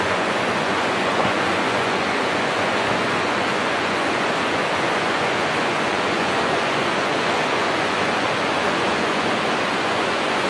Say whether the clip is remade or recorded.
remade